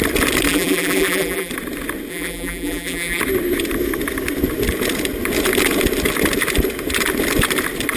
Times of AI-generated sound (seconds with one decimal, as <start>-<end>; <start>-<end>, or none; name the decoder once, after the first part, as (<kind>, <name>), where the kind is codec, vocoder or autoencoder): 0.5-1.5 (vocoder, BigVGAN v2); 2.1-3.2